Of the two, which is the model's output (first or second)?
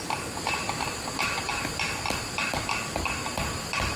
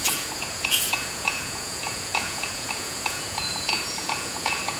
second